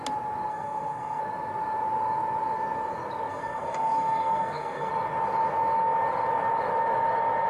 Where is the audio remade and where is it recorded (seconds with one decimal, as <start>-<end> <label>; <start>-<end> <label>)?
0.0-0.5 recorded; 0.5-1.2 remade; 1.2-3.3 recorded; 3.3-4.9 remade; 4.9-7.5 recorded